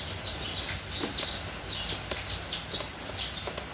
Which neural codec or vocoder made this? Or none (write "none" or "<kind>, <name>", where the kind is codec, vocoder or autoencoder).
none